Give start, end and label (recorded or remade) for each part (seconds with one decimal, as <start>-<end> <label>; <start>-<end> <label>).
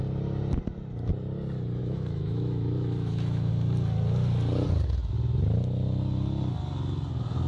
0.0-1.8 recorded; 1.8-3.5 remade; 3.5-7.5 recorded